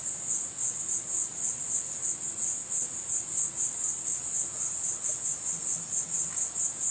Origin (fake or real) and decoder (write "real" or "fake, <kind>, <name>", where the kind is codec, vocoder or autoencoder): real